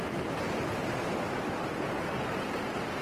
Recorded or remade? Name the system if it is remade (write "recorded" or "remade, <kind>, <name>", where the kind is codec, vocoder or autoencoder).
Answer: recorded